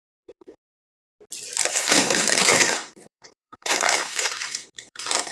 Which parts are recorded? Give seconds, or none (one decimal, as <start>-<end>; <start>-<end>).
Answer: 0.8-1.7